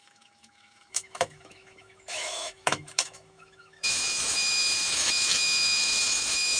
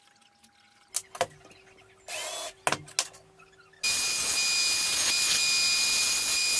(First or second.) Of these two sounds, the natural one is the second